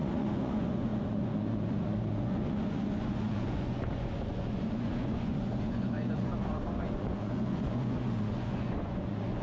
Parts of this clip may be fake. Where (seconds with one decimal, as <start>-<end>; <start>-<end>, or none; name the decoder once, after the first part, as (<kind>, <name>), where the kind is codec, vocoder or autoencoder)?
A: 0.0-9.4 (vocoder, Vocos)